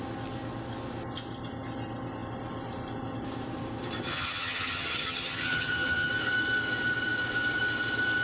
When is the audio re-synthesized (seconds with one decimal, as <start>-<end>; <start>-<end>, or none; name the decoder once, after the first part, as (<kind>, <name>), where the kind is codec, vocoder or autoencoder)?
4.0-6.1 (vocoder, HiFi-GAN)